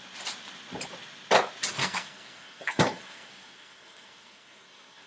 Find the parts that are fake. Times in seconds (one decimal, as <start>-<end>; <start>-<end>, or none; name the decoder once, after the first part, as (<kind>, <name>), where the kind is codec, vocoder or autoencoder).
1.8-5.1 (codec, SNAC)